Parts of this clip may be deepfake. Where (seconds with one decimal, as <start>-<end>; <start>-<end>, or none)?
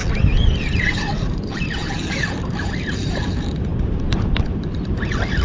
0.6-5.4